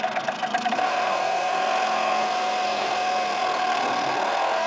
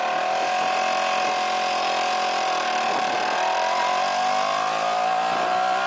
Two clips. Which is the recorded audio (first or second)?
second